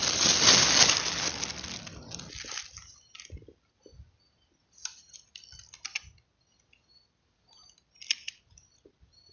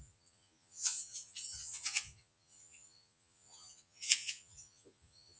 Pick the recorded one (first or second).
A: first